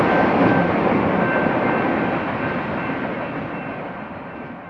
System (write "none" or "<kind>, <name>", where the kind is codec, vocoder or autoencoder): none